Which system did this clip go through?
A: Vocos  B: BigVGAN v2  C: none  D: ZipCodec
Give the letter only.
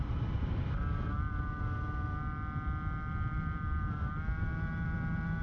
C